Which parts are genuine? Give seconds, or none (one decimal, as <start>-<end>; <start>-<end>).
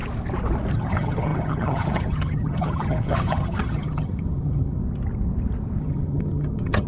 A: 0.0-0.7; 4.8-5.8